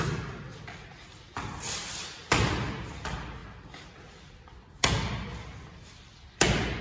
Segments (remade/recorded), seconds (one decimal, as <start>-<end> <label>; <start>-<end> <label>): 0.0-6.8 recorded